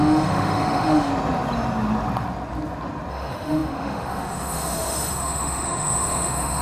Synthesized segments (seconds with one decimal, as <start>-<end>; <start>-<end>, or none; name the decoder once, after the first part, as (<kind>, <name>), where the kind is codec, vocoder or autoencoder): 0.0-1.1 (autoencoder, DAC-VAE); 3.1-6.6